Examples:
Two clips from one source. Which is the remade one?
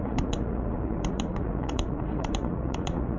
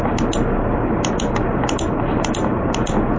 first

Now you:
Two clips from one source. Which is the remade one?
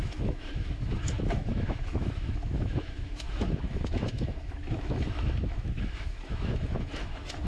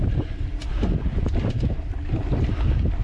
first